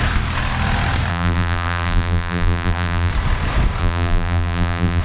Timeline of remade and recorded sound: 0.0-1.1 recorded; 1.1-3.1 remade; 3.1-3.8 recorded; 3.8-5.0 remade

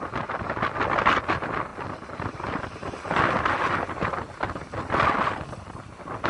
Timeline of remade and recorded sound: 0.0-6.3 recorded

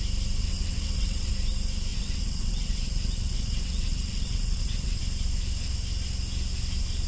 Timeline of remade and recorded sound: 0.0-0.4 recorded; 0.4-1.3 remade; 1.3-1.9 recorded; 1.9-5.0 remade; 5.0-7.1 recorded

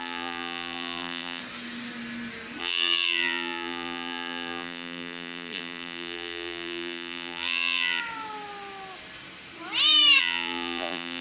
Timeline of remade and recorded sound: 0.0-1.4 remade; 1.4-2.6 recorded; 2.6-8.0 remade; 8.0-10.2 recorded; 10.2-11.2 remade

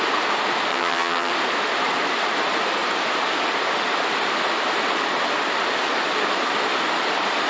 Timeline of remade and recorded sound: 0.0-0.7 recorded; 0.7-1.3 remade; 1.3-7.5 recorded